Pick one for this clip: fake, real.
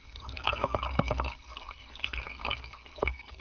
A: fake